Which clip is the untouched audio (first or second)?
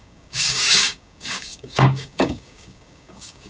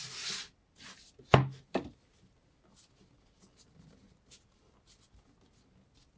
second